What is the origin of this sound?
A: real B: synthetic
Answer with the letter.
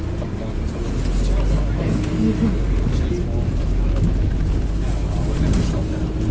A